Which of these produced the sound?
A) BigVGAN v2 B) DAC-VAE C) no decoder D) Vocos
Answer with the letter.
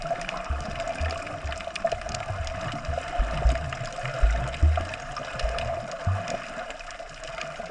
C